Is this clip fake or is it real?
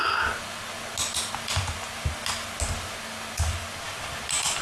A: real